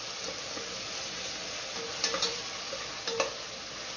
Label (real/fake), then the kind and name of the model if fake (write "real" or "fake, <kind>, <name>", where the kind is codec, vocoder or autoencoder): real